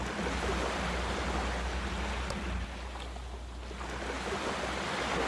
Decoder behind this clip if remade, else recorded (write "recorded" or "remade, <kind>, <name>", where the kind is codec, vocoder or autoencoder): recorded